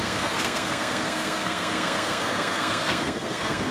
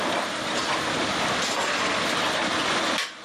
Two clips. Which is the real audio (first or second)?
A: second